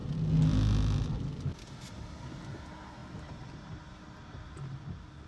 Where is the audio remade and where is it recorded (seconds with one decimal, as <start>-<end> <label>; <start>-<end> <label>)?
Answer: 0.0-5.3 recorded